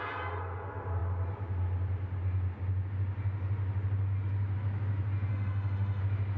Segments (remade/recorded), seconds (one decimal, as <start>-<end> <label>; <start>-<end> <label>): 0.0-5.3 recorded; 5.3-6.0 remade; 6.0-6.4 recorded